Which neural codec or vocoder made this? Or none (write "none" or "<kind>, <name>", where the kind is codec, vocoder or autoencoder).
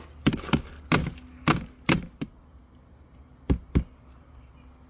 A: none